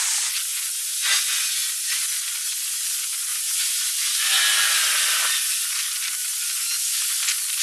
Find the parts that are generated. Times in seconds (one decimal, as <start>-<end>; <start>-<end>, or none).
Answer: 0.5-1.7; 3.3-4.4